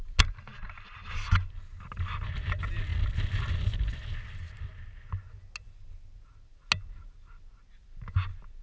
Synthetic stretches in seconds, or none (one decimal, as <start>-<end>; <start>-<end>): none